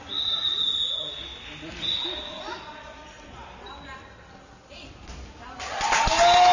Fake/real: real